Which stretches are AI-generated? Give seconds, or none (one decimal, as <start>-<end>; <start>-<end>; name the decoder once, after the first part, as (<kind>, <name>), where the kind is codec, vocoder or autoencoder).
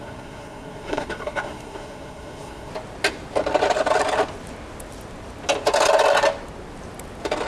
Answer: 0.0-2.7 (codec, SNAC)